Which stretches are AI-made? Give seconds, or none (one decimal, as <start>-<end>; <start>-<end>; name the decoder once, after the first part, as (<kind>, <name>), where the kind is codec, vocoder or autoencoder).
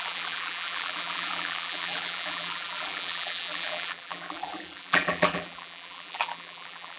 0.0-7.0 (vocoder, BigVGAN v2)